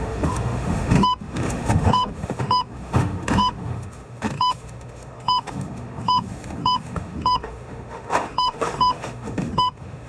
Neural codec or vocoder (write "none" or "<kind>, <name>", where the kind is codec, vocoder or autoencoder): autoencoder, DAC-VAE